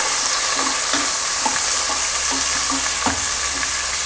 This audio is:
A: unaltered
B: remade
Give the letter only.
A